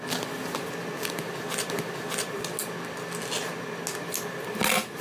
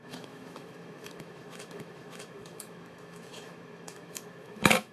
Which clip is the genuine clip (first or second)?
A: first